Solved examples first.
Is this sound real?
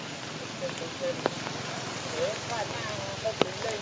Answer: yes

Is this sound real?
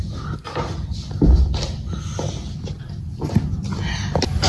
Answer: yes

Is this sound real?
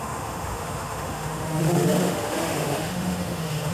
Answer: no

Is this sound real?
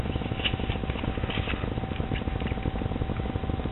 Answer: yes